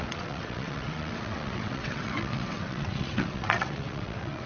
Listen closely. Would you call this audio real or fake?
fake